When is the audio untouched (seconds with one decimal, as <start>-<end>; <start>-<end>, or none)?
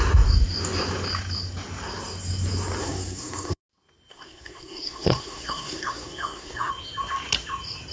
0.0-2.8; 3.6-4.1; 6.7-7.9